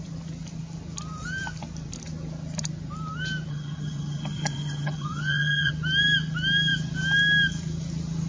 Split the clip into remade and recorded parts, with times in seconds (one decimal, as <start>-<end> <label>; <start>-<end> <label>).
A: 0.0-3.5 recorded; 3.5-5.7 remade; 5.7-8.3 recorded